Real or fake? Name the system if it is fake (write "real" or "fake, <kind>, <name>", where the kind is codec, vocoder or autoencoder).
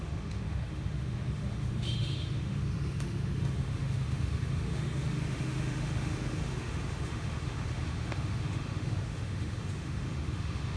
fake, autoencoder, DAC-VAE